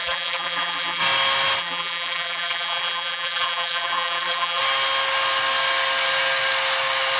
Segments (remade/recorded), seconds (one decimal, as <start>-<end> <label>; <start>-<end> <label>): 0.0-1.0 remade; 1.0-1.6 recorded; 1.6-4.6 remade; 4.6-7.2 recorded